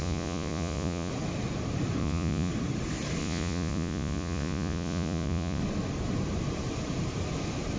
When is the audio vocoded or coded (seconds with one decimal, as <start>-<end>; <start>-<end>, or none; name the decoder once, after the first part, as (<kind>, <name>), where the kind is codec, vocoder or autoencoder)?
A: 0.0-1.1 (vocoder, Vocos); 2.0-2.5; 3.2-5.6